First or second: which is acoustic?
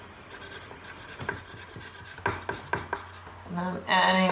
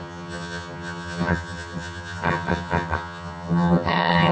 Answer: first